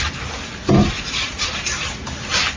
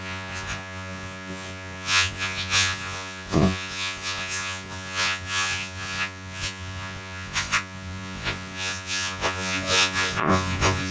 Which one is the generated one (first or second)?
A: second